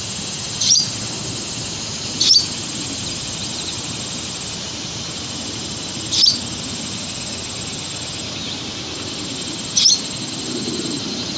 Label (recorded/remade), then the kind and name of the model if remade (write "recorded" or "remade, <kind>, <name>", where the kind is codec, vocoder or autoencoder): remade, vocoder, BigVGAN v2